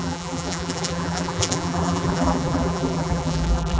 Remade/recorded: remade